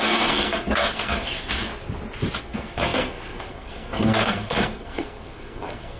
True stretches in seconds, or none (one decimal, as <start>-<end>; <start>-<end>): 1.7-2.4